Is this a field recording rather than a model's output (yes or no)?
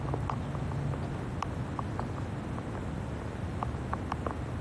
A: yes